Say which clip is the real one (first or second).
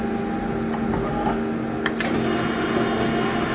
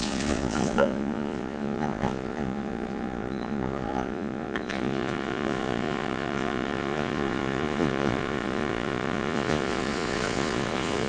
first